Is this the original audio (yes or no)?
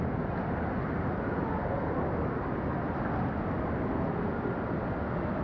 yes